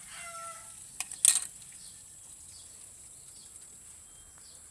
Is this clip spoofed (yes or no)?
no